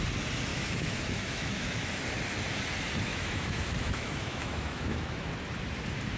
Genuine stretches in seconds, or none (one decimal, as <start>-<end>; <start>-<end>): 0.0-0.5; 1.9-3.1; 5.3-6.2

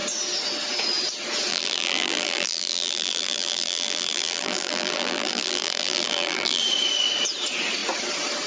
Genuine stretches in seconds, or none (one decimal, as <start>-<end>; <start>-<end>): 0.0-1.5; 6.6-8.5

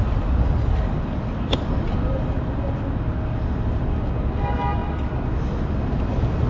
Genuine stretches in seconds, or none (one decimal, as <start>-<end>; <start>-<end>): 0.0-6.5

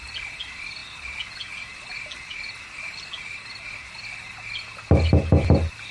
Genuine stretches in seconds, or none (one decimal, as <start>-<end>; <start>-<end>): 0.0-5.9

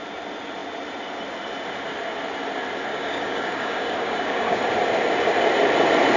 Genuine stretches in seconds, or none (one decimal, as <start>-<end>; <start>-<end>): 0.0-2.9; 4.6-6.2

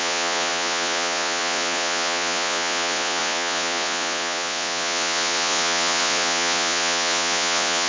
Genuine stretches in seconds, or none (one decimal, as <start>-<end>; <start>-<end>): none

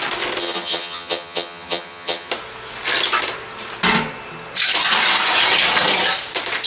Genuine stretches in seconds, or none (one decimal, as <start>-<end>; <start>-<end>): 0.0-0.4; 2.3-6.7

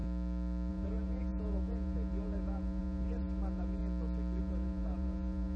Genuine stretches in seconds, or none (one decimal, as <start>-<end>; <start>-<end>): 0.0-0.7; 3.8-4.4